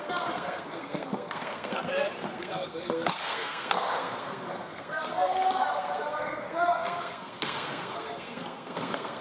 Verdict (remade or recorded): remade